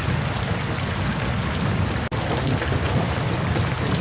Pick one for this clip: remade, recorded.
recorded